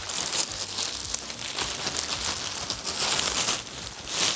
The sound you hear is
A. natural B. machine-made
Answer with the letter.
A